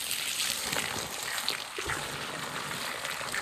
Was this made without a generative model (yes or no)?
yes